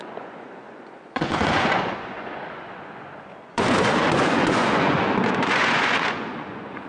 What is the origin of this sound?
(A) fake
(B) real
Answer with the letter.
A